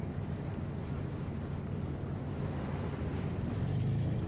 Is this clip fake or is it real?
real